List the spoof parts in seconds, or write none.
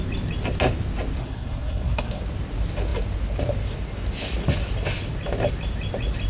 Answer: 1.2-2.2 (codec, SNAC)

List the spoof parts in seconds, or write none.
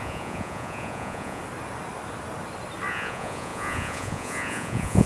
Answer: 0.0-1.4 (vocoder, Vocos); 2.9-5.1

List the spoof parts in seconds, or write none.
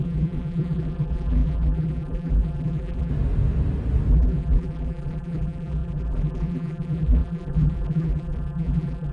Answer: 0.0-3.1 (vocoder, BigVGAN v2); 4.1-9.1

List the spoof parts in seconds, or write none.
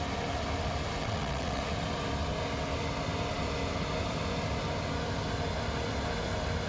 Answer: 1.0-1.6 (vocoder, WaveNeXt)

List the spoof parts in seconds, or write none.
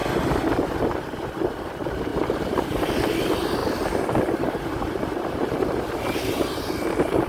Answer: 1.0-2.1 (vocoder, BigVGAN v2); 2.8-3.6; 4.2-7.3